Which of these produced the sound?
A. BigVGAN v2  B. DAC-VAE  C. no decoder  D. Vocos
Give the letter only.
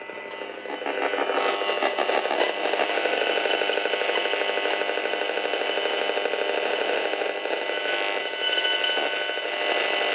C